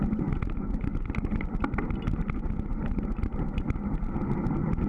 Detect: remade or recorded recorded